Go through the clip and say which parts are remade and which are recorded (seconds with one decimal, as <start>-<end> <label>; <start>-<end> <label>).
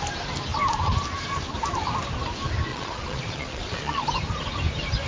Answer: 0.0-2.7 recorded; 2.7-4.0 remade; 4.0-5.1 recorded